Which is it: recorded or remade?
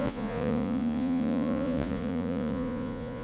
remade